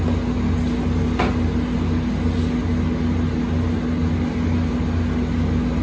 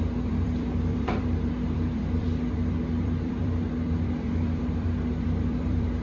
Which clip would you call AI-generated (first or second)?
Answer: second